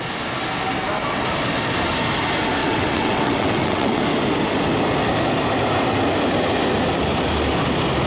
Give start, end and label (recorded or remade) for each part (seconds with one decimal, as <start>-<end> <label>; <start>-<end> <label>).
0.0-2.6 recorded; 2.6-4.0 remade; 4.0-8.1 recorded